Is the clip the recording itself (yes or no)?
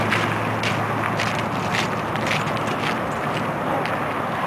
yes